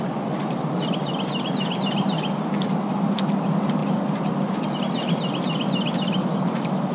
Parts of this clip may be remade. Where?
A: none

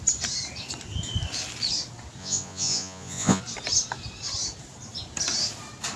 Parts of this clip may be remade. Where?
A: 2.2-3.4 (vocoder, Vocos)

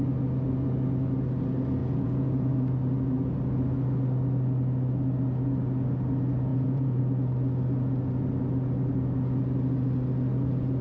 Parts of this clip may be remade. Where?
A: 1.8-2.5 (vocoder, Vocos); 6.5-7.0

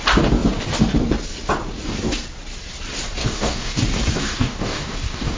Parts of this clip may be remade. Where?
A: 3.2-3.8 (codec, DAC); 4.2-5.4

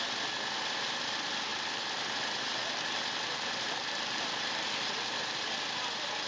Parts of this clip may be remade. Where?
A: none